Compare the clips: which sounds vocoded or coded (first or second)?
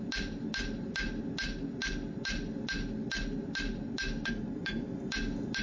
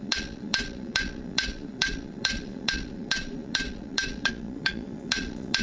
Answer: second